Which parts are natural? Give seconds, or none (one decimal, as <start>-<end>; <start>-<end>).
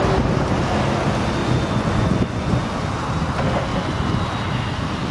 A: 0.0-1.4; 2.7-3.7; 4.2-5.1